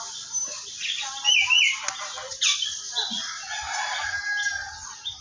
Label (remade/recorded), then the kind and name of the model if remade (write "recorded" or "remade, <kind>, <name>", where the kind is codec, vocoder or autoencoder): recorded